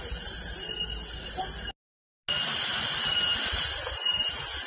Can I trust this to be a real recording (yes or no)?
yes